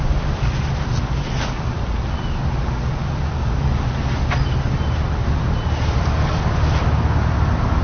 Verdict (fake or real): real